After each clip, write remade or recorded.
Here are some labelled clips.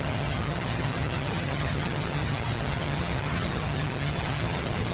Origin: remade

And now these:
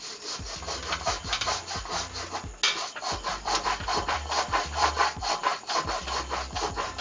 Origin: recorded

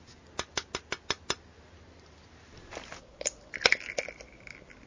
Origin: recorded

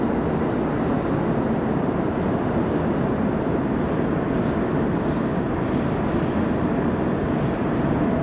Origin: recorded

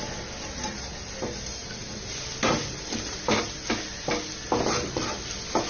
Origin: recorded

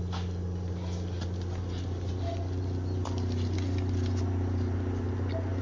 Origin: recorded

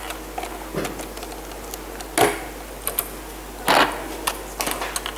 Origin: recorded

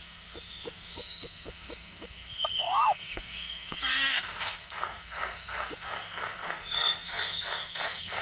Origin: remade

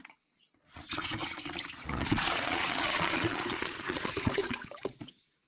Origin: remade